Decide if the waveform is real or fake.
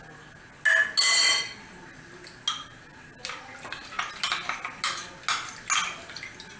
real